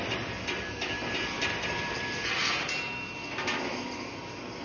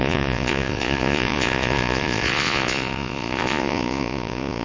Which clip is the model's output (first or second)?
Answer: second